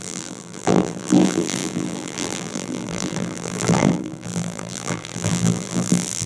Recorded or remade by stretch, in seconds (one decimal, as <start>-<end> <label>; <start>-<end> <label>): 0.0-6.3 remade